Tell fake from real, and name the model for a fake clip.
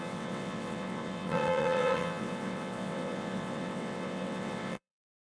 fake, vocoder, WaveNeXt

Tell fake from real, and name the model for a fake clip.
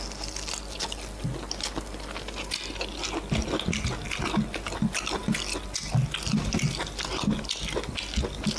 real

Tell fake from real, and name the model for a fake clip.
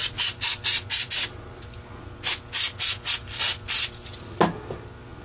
real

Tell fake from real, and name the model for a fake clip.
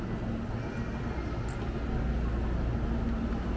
real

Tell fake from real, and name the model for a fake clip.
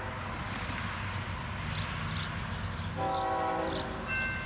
real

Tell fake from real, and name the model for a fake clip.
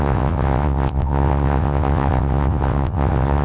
fake, vocoder, WaveNeXt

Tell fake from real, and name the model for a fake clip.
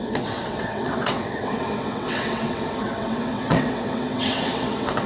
fake, vocoder, WaveNeXt